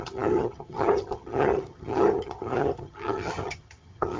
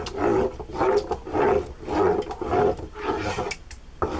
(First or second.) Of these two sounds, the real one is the second